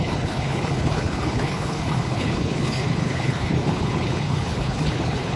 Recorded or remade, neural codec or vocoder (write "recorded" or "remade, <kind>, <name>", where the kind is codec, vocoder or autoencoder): remade, codec, HILCodec